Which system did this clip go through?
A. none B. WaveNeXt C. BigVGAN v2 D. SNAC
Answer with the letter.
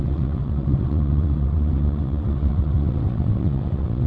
B